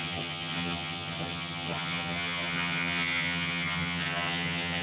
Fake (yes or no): yes